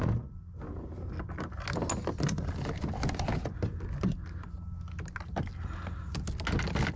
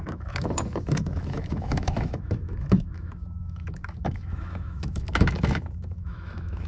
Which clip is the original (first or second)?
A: first